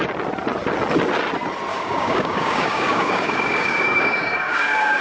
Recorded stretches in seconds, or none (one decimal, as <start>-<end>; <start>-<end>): 0.0-1.7